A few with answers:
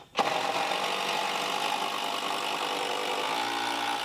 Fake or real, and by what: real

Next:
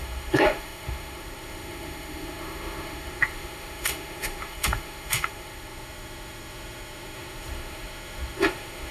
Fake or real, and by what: fake, autoencoder, DAC-VAE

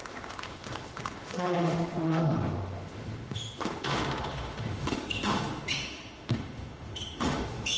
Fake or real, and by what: fake, autoencoder, DAC-VAE